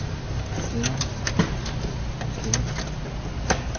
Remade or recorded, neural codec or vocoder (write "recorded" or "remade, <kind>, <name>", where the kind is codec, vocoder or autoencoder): recorded